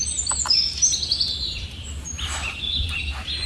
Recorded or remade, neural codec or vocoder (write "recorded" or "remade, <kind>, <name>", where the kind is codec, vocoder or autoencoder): recorded